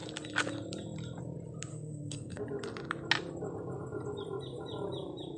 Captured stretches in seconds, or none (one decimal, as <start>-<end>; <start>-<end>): 0.0-1.7; 2.4-5.4